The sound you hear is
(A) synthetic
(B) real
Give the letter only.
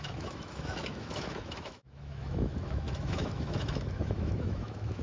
A